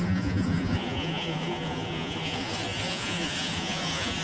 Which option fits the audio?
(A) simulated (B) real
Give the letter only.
A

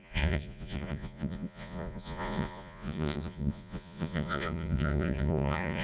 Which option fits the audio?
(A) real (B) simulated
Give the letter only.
B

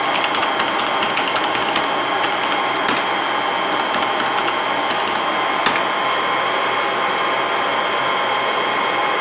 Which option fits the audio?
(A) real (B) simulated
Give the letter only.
A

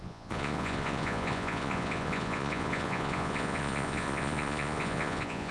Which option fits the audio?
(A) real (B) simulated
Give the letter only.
B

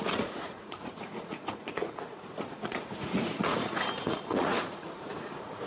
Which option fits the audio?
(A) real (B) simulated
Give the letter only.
B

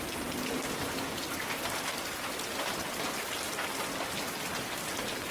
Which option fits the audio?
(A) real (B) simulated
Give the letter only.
A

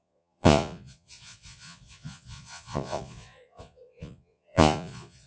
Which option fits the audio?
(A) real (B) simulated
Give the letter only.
B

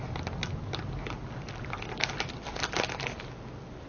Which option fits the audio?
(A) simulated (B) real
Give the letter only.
B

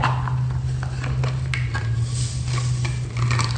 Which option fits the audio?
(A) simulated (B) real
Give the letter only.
B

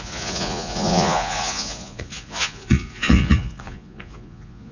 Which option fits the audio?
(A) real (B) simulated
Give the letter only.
B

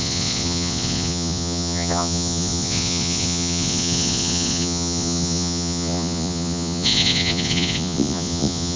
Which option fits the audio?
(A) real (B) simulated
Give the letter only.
B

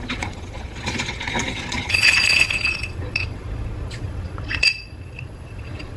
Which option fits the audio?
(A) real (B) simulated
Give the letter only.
B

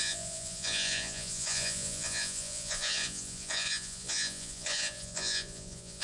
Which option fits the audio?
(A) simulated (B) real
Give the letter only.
A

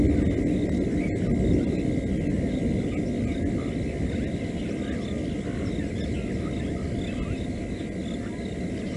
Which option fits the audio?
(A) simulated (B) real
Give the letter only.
B